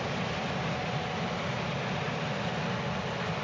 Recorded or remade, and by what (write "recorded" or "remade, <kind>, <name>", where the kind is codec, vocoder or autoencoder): recorded